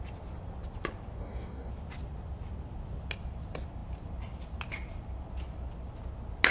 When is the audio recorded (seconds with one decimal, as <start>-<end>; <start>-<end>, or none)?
0.0-1.2; 1.7-6.5